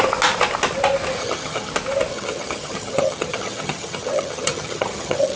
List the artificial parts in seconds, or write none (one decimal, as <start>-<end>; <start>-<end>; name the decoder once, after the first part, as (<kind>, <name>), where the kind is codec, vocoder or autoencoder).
1.2-1.7 (vocoder, HiFi-GAN); 2.1-5.4